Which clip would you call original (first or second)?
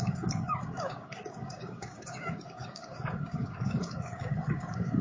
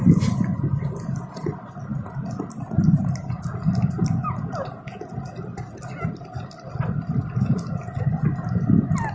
second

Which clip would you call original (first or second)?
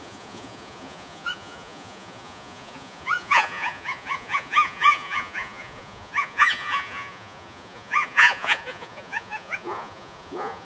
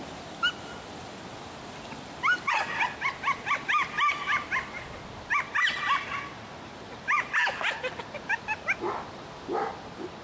second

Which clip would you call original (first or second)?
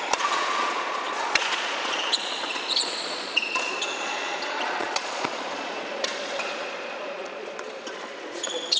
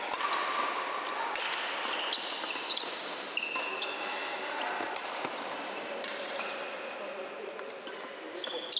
second